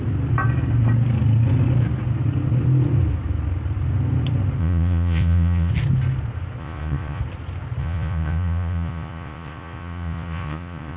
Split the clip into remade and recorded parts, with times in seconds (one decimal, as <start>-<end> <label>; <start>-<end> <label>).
0.0-4.6 recorded; 4.6-5.7 remade; 5.7-6.6 recorded; 6.6-7.2 remade; 7.2-7.8 recorded; 7.8-11.0 remade